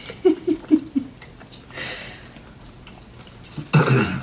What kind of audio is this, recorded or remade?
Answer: remade